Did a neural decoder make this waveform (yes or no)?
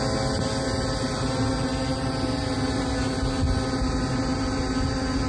no